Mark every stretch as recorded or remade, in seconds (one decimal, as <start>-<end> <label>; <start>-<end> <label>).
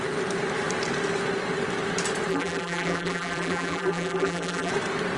0.0-2.3 recorded; 2.3-4.7 remade; 4.7-5.2 recorded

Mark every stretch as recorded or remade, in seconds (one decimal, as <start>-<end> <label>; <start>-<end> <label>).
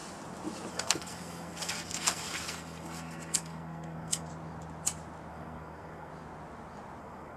0.0-0.7 recorded; 0.7-4.3 remade; 4.3-5.3 recorded; 5.3-6.1 remade; 6.1-7.0 recorded; 7.0-7.4 remade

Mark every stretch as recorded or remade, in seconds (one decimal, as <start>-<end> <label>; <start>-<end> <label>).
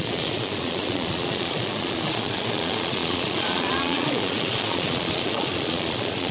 0.0-6.3 remade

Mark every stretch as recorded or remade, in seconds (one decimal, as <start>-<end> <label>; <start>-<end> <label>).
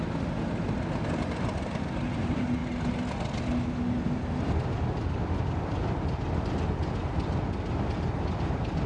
0.0-8.9 recorded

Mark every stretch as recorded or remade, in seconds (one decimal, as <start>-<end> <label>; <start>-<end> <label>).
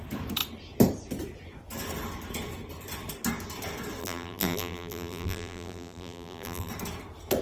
0.0-4.0 recorded; 4.0-6.7 remade; 6.7-7.4 recorded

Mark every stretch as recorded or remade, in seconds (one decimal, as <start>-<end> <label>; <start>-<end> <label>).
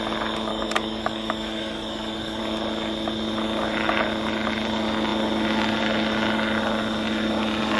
0.0-0.5 recorded; 0.5-2.4 remade; 2.4-7.8 recorded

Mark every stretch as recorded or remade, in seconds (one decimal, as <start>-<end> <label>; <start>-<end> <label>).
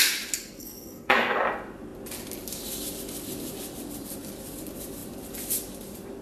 0.0-0.4 recorded; 0.4-1.4 remade; 1.4-6.2 recorded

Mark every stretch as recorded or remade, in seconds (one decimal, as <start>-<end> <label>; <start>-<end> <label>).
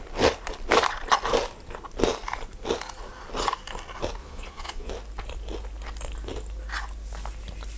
0.0-4.2 recorded; 4.2-4.9 remade; 4.9-7.8 recorded